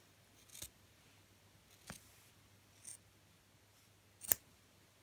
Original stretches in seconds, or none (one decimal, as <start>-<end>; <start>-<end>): 0.0-5.0